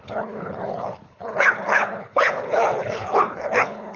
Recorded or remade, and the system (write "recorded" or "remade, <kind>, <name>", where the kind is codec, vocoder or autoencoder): remade, codec, HILCodec